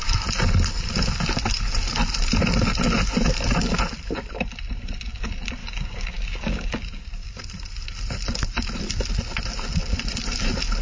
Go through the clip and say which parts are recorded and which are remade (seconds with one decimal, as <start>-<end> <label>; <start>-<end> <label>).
0.0-5.6 recorded; 5.6-7.4 remade; 7.4-10.8 recorded